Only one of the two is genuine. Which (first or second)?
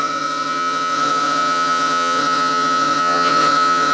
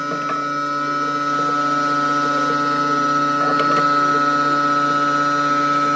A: second